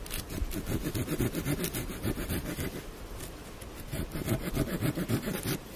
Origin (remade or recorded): recorded